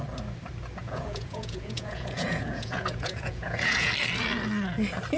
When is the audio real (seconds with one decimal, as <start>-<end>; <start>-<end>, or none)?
0.0-0.8; 3.9-5.2

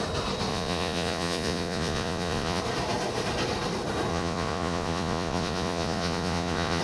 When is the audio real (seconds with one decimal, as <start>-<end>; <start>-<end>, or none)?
0.0-0.5; 2.6-4.1

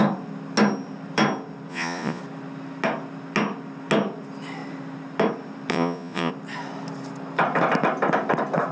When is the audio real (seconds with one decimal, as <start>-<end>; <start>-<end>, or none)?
0.0-1.7; 2.2-5.7; 6.3-8.7

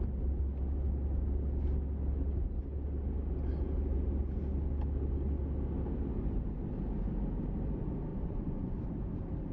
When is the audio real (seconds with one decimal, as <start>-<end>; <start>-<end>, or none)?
0.0-8.1; 8.8-9.5

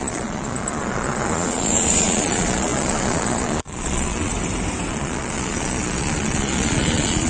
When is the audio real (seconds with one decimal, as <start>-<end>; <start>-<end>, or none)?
4.3-4.9

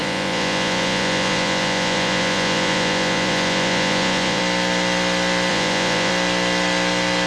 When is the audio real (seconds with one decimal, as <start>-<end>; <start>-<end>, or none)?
4.4-5.5; 6.1-7.3

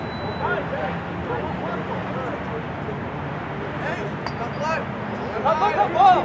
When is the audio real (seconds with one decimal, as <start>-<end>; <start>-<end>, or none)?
0.0-6.2